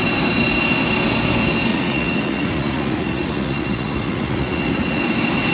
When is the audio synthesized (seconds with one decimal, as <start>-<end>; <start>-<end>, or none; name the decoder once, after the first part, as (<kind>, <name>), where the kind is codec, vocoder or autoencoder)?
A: 1.7-5.0 (vocoder, Vocos)